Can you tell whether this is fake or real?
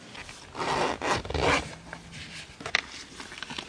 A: real